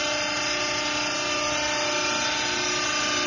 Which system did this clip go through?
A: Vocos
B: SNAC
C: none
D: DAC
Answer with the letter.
C